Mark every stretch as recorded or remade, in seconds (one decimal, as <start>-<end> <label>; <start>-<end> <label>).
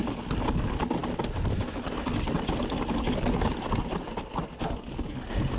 0.0-5.6 recorded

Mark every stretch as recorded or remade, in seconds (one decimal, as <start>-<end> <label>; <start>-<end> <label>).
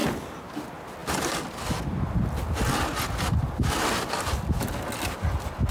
0.0-5.7 recorded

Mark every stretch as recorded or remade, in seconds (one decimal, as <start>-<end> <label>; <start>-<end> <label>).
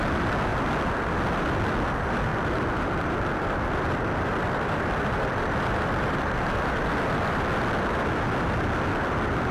0.0-2.3 recorded; 2.3-6.9 remade; 6.9-9.5 recorded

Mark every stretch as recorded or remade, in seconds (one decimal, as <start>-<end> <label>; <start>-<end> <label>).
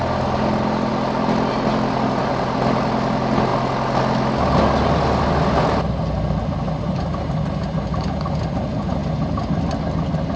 0.0-10.4 recorded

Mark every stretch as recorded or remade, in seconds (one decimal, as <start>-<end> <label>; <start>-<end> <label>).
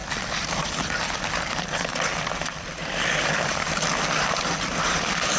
0.0-2.1 recorded; 2.1-5.4 remade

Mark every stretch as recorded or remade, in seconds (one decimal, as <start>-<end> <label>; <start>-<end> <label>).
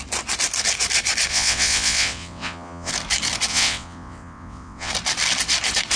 0.0-1.3 recorded; 1.3-2.9 remade; 2.9-3.5 recorded; 3.5-4.9 remade; 4.9-6.0 recorded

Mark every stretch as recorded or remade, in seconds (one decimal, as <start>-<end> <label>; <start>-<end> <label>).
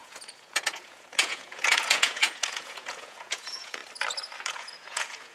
0.0-3.8 remade; 3.8-4.4 recorded; 4.4-5.3 remade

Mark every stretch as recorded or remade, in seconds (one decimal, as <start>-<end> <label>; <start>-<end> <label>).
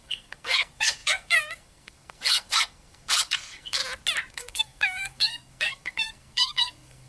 0.0-3.8 remade; 3.8-4.3 recorded; 4.3-7.1 remade